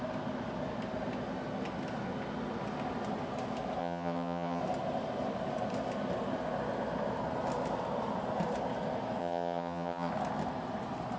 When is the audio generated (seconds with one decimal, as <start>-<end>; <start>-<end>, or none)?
3.8-4.6; 9.2-10.1